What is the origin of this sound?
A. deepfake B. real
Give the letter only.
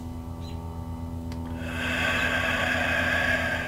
B